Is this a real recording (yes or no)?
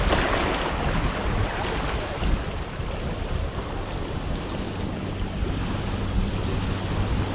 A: yes